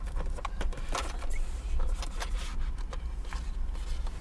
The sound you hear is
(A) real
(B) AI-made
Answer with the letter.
A